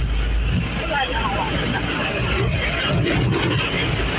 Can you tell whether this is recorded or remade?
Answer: recorded